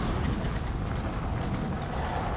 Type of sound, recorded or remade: recorded